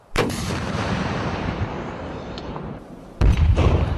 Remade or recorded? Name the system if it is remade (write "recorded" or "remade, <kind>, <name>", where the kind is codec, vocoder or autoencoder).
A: remade, vocoder, BigVGAN v2